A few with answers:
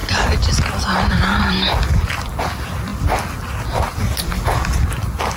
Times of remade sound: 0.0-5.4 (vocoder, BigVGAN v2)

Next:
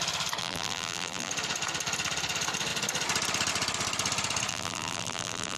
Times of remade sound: 0.4-1.3 (vocoder, BigVGAN v2); 4.5-5.6

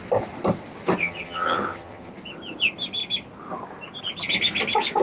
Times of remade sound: 1.0-2.1 (vocoder, HiFi-GAN)

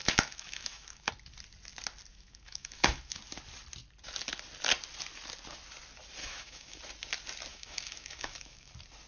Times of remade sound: 0.0-1.1 (autoencoder, DAC-VAE); 2.1-3.2; 6.2-6.8; 7.5-8.7